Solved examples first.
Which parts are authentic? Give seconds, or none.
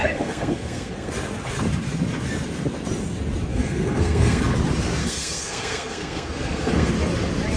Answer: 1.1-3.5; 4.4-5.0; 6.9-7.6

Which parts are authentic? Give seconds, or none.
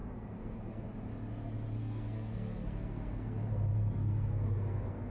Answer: 0.8-1.8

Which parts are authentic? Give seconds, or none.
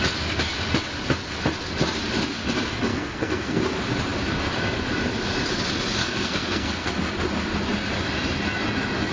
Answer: 0.0-2.9; 3.6-6.0; 6.9-9.1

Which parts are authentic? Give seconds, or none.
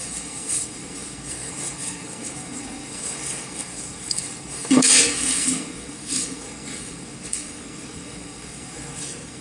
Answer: none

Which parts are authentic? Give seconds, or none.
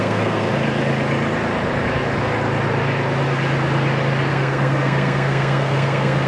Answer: 0.5-4.3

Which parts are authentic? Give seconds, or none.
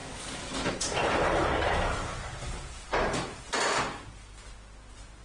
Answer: 0.0-5.2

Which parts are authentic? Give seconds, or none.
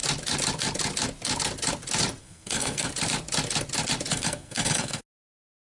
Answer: 0.0-2.2; 2.9-4.1; 5.0-5.7